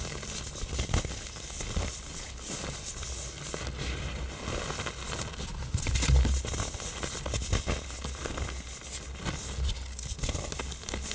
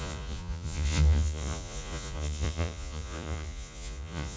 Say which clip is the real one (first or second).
first